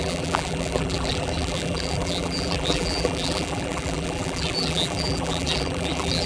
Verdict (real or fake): fake